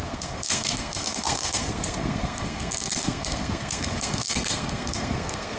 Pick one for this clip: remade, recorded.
remade